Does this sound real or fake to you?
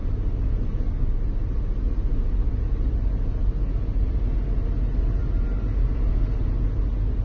real